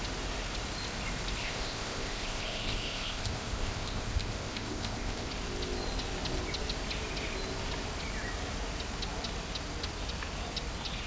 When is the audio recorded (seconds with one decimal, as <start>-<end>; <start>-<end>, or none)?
0.0-1.4; 5.3-11.1